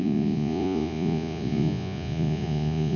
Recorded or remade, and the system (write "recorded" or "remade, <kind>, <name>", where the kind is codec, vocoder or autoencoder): remade, vocoder, Vocos